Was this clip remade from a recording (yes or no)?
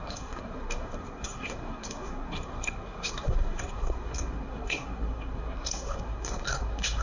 yes